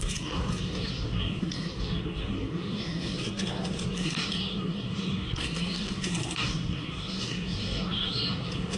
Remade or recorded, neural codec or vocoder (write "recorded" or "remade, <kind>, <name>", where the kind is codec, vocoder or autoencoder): remade, codec, SNAC